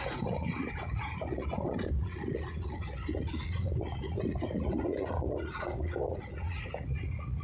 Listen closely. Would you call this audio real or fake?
fake